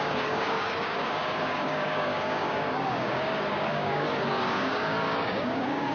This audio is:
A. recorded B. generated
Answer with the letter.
B